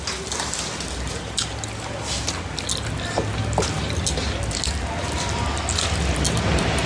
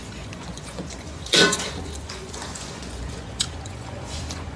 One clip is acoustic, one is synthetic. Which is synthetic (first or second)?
second